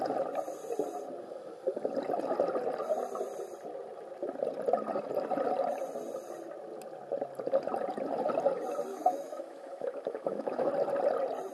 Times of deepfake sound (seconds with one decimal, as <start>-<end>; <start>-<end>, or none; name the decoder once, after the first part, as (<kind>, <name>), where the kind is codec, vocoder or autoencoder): 8.9-10.7 (autoencoder, DAC-VAE)